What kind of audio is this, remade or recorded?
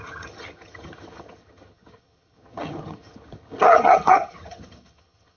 remade